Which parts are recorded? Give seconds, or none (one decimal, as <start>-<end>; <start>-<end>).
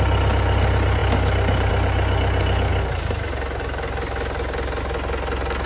0.0-5.7